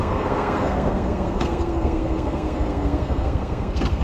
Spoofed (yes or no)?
yes